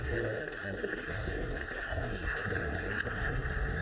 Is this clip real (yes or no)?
no